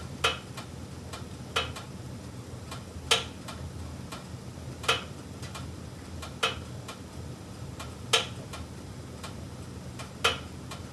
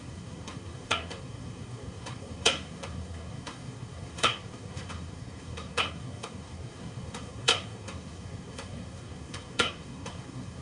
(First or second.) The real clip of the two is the first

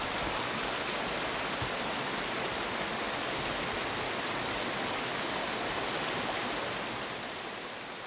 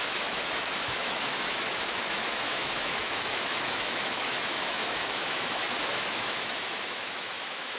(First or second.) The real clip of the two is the first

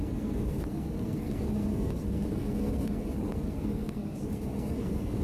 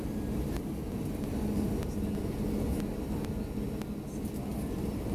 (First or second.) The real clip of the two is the second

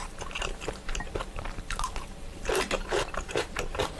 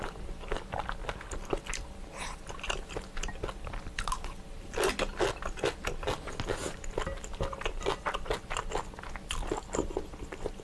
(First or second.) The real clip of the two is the second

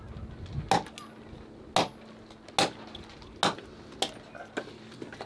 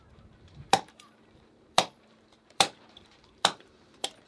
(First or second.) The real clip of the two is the first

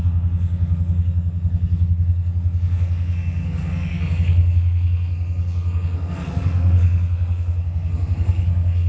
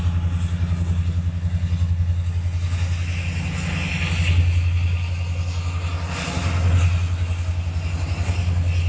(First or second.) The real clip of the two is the second